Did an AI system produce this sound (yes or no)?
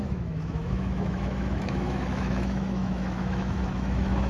yes